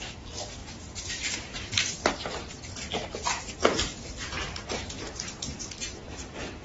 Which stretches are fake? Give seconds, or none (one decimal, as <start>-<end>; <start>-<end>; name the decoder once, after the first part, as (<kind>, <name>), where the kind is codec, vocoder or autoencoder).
0.6-2.1 (vocoder, BigVGAN v2); 3.6-6.6